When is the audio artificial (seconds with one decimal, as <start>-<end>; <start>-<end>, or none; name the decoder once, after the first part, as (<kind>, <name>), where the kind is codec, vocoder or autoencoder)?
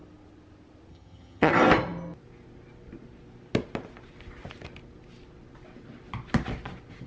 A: 0.9-1.5 (vocoder, HiFi-GAN)